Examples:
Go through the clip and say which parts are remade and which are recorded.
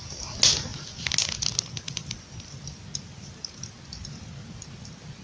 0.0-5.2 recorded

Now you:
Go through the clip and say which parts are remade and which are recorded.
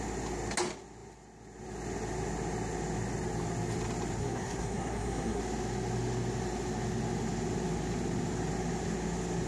0.0-4.2 recorded; 4.2-5.4 remade; 5.4-9.5 recorded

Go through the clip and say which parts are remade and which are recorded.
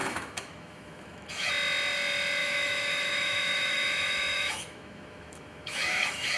0.0-1.5 remade; 1.5-2.4 recorded; 2.4-6.4 remade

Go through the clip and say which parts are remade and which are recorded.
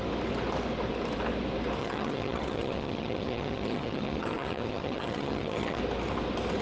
0.0-1.8 recorded; 1.8-5.8 remade; 5.8-6.6 recorded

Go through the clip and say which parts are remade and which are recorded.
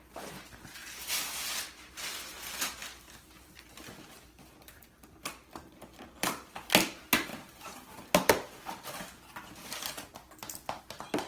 0.0-0.8 recorded; 0.8-1.3 remade; 1.3-2.8 recorded; 2.8-6.7 remade; 6.7-7.3 recorded; 7.3-10.8 remade; 10.8-11.3 recorded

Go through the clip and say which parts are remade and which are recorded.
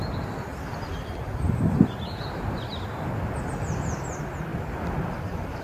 0.0-5.6 recorded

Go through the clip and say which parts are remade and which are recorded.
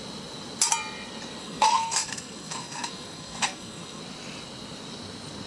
0.0-1.4 recorded; 1.4-4.0 remade; 4.0-5.5 recorded